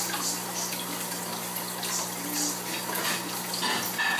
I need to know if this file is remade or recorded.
recorded